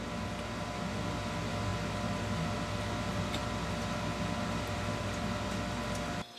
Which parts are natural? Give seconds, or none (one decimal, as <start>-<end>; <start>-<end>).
0.0-6.4